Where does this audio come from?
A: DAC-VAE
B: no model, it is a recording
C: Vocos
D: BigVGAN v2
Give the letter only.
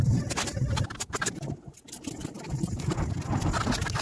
B